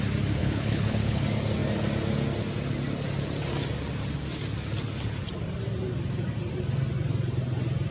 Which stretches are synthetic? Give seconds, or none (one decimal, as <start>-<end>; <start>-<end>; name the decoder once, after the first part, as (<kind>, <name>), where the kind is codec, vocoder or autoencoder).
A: 0.4-1.2 (codec, HILCodec)